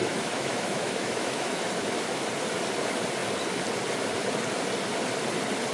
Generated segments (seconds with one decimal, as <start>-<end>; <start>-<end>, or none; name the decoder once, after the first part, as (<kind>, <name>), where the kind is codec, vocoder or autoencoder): 0.0-2.3 (autoencoder, DAC-VAE)